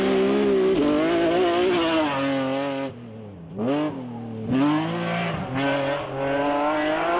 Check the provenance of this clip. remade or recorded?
recorded